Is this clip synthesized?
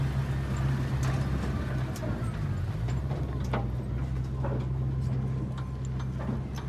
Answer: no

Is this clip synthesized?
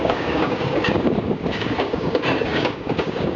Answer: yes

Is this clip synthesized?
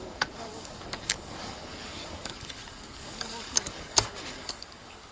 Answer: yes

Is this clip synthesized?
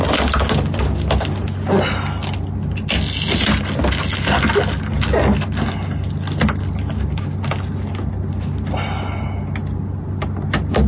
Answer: no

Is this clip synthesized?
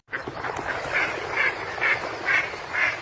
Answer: no